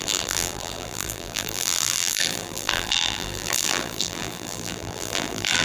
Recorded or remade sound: remade